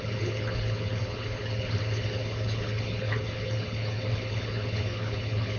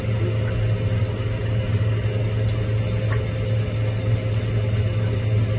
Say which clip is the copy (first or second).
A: first